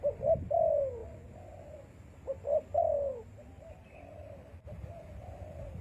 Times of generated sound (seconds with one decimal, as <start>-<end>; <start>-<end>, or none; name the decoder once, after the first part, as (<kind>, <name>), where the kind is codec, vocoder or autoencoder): none